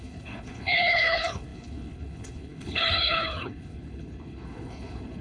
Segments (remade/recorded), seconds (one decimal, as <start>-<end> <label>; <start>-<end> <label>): 0.0-5.2 remade